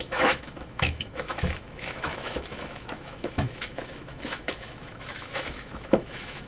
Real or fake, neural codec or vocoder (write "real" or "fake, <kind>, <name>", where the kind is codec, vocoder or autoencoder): fake, autoencoder, DAC-VAE